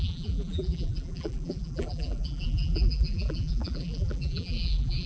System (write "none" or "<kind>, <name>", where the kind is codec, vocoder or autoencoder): vocoder, BigVGAN v2